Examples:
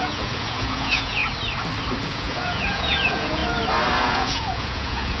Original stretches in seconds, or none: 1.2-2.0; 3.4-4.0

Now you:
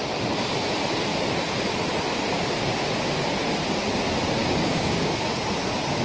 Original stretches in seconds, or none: 0.0-4.4; 5.5-6.0

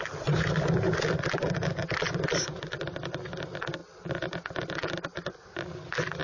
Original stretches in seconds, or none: 0.0-6.2

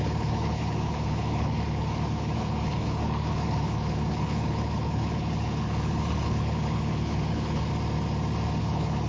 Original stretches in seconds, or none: 7.7-8.6

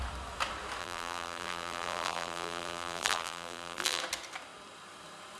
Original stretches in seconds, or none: 0.0-0.8; 4.0-5.4

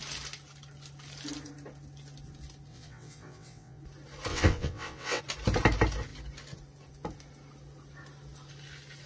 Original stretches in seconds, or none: 0.0-2.7; 3.8-4.3; 5.2-9.1

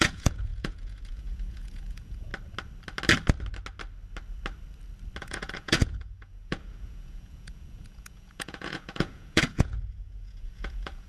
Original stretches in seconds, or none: 2.3-5.2

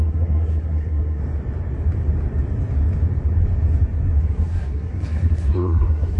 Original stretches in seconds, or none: 1.2-4.2